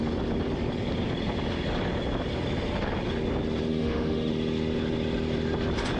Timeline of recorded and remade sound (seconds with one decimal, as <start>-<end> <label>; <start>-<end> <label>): 0.0-3.7 recorded; 3.7-4.3 remade; 4.3-6.0 recorded